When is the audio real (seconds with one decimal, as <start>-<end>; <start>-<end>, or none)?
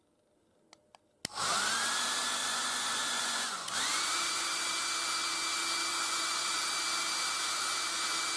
0.0-2.4; 4.7-5.9; 6.7-8.4